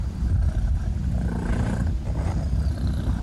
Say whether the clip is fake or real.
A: real